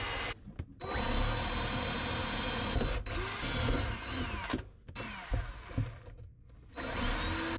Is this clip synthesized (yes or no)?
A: no